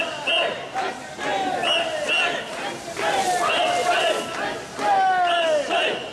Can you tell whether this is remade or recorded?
recorded